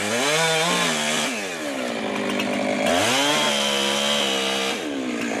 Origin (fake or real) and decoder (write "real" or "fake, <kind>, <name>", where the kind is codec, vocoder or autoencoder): real